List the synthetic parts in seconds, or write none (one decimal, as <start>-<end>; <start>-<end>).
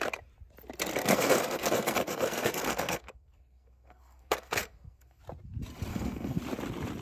1.0-5.2; 5.9-6.4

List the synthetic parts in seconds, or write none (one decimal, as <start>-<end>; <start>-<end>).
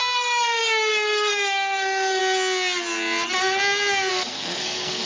0.0-2.2; 4.1-5.1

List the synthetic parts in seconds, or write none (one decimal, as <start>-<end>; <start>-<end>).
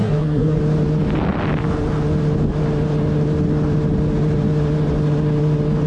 0.0-0.6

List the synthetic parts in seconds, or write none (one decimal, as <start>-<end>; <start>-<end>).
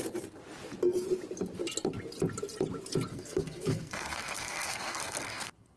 3.1-5.8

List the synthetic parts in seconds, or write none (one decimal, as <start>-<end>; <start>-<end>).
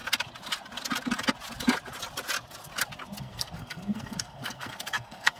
3.2-5.4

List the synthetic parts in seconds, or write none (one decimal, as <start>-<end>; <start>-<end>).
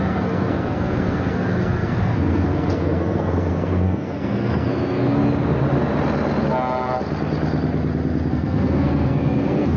0.0-5.2; 8.3-9.8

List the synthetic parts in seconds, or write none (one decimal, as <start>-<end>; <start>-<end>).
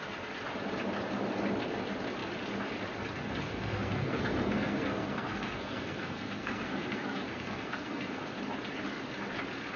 3.5-8.2